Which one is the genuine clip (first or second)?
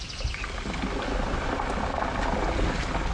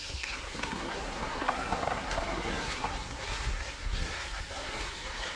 first